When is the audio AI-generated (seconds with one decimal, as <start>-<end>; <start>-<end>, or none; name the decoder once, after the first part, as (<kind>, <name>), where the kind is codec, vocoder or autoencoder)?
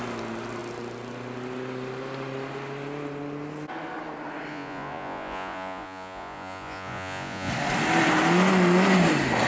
4.5-7.5 (vocoder, Vocos)